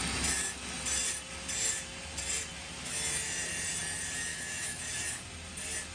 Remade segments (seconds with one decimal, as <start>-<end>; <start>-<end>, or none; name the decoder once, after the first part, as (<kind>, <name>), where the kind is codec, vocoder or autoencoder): 4.3-4.8 (autoencoder, DAC-VAE)

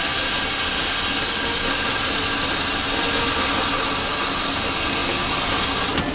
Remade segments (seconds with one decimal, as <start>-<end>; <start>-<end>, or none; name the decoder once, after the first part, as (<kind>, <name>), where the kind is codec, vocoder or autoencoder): none

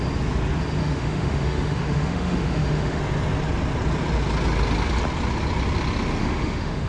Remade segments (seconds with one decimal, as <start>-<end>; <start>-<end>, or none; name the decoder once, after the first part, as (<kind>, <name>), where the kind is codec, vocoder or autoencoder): 0.8-3.0 (autoencoder, DAC-VAE); 6.2-6.9

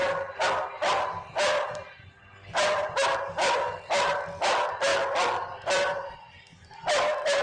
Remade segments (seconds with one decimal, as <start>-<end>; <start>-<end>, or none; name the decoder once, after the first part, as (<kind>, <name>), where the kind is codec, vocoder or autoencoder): none

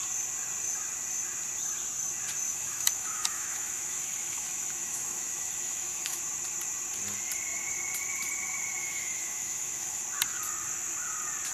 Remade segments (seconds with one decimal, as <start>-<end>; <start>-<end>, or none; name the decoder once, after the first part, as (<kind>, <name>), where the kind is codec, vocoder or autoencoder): 2.5-6.2 (autoencoder, DAC-VAE); 8.8-10.0

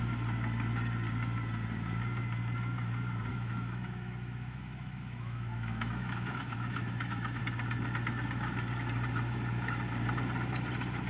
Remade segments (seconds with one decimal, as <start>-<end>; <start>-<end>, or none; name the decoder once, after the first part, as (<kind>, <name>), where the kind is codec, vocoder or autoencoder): 3.3-7.4 (autoencoder, DAC-VAE)